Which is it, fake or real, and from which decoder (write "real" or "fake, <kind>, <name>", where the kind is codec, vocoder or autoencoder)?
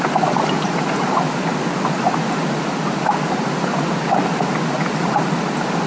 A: real